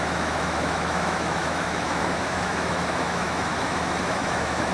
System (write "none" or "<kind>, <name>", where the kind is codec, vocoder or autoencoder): autoencoder, DAC-VAE